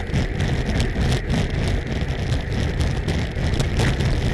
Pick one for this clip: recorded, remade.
recorded